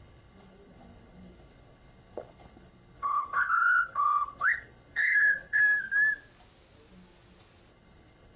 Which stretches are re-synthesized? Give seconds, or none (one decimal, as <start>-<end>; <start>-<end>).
0.0-5.6; 7.7-8.4